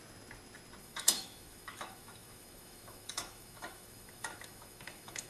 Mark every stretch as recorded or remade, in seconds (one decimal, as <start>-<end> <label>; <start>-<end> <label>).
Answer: 0.0-0.8 recorded; 0.8-5.3 remade